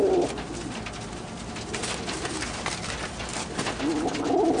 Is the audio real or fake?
real